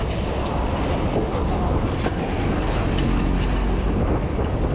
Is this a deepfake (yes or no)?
no